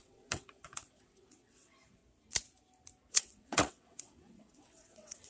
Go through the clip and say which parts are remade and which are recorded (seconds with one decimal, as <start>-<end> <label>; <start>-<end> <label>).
0.0-2.0 remade; 2.0-3.1 recorded; 3.1-5.3 remade